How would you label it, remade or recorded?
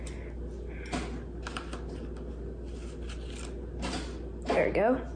recorded